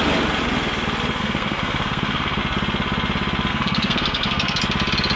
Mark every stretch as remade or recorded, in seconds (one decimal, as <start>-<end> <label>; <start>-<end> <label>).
0.0-1.2 recorded; 1.2-2.4 remade; 2.4-3.5 recorded; 3.5-4.6 remade; 4.6-5.2 recorded